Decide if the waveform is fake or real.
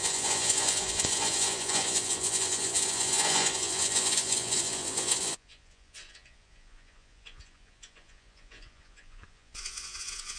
fake